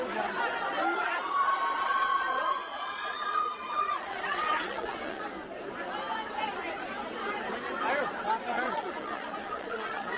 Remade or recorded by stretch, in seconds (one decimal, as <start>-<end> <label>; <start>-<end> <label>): 0.0-0.9 recorded; 0.9-5.2 remade; 5.2-8.5 recorded; 8.5-10.2 remade